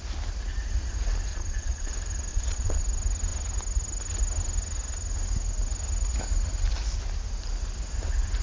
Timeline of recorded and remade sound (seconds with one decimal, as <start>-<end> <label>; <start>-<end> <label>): 0.0-1.3 recorded; 1.3-1.9 remade; 1.9-2.3 recorded; 2.3-2.8 remade; 2.8-8.4 recorded